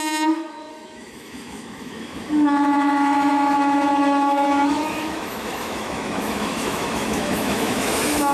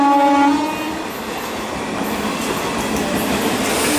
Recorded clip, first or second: second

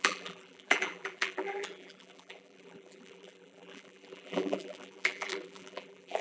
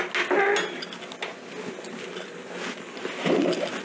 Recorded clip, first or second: second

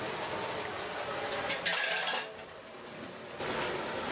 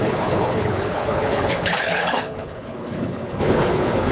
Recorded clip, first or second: first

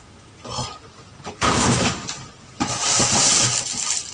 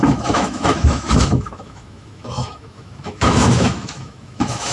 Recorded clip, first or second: first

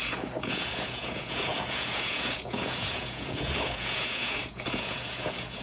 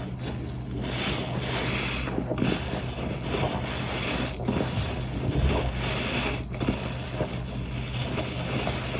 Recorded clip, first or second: second